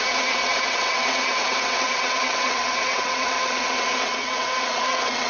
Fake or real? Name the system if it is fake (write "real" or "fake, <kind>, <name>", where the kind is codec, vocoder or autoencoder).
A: fake, vocoder, WaveNeXt